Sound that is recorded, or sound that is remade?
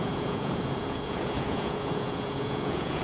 remade